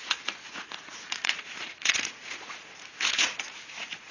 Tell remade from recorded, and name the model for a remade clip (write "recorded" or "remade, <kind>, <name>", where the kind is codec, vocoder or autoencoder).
remade, vocoder, Vocos